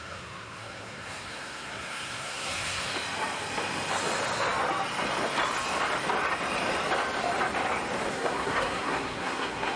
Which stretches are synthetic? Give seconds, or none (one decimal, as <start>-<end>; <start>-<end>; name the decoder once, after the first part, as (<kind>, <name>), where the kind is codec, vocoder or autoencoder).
0.0-2.9 (codec, SNAC); 8.1-9.8